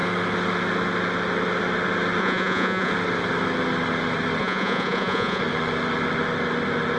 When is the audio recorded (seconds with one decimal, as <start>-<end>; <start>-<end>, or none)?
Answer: 0.0-2.2; 2.9-4.4; 5.4-7.0